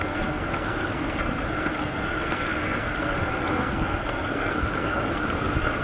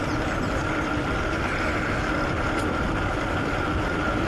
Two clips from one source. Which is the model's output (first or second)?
first